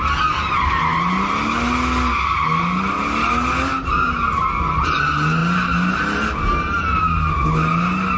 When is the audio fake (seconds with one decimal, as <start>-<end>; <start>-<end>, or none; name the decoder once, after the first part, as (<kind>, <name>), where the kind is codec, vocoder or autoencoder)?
none